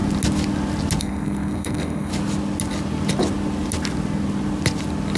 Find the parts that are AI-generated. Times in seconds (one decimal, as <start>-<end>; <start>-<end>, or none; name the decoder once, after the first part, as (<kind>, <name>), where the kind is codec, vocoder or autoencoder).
1.0-2.1 (codec, SNAC)